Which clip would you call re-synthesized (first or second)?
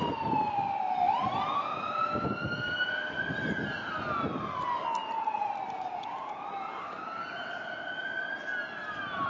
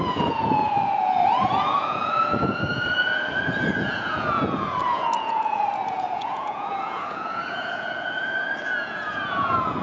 second